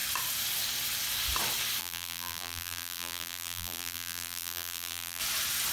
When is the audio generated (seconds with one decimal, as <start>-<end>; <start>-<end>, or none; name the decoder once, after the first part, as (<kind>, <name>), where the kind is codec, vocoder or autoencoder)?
1.8-5.2 (vocoder, BigVGAN v2)